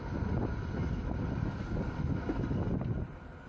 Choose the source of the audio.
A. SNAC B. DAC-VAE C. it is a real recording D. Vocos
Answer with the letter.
C